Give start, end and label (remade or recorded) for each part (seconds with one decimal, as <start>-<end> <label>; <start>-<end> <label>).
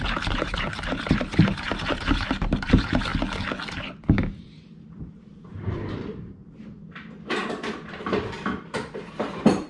0.0-3.1 remade; 3.1-3.7 recorded; 3.7-9.7 remade